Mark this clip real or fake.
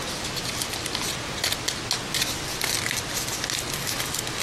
real